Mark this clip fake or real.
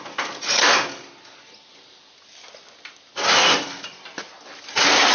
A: real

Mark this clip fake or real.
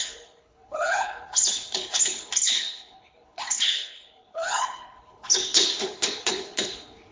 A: fake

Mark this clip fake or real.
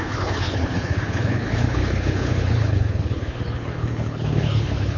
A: fake